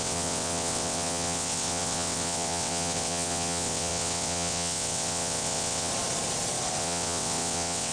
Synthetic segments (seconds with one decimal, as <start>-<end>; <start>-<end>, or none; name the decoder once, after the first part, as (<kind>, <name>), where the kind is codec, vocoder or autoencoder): 0.0-5.9 (vocoder, WaveNeXt); 6.8-7.9